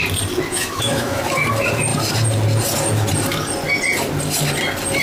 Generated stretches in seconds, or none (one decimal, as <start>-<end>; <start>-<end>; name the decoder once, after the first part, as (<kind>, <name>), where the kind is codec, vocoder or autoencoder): 0.5-1.2 (autoencoder, DAC-VAE)